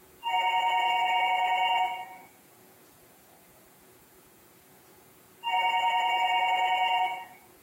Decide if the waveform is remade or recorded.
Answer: remade